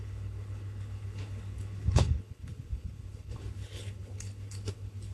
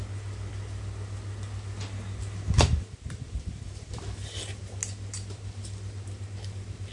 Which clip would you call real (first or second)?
second